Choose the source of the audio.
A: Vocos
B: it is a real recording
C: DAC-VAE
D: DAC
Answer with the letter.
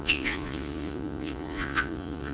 A